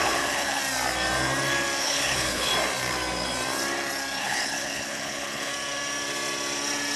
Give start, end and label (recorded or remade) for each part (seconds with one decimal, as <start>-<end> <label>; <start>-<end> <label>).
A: 0.0-0.6 remade; 0.6-1.8 recorded; 1.8-2.5 remade; 2.5-4.2 recorded; 4.2-5.5 remade; 5.5-7.0 recorded